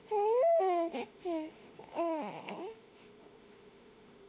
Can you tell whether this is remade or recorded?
remade